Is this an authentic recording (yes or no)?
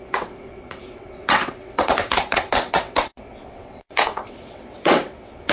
no